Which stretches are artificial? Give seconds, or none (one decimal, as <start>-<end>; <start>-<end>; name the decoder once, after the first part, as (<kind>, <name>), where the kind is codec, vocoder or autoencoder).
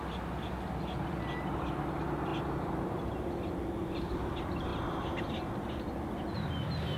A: 2.3-3.3 (vocoder, BigVGAN v2); 3.8-4.3; 4.7-5.5